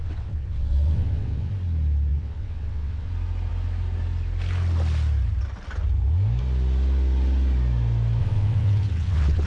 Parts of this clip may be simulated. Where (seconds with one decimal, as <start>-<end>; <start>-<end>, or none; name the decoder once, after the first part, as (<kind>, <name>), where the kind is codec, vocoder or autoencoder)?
0.0-1.5 (vocoder, WaveNeXt); 2.1-3.1; 8.2-9.5